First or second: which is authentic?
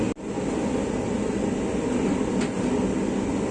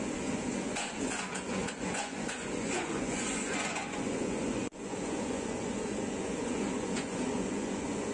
first